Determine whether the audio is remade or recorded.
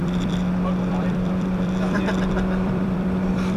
remade